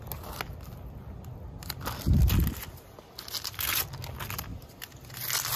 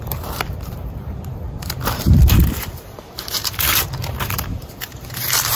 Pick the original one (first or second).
first